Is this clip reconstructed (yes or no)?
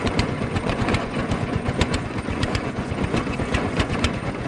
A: yes